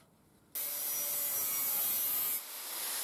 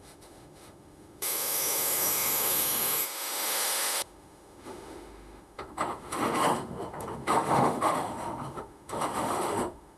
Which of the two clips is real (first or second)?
first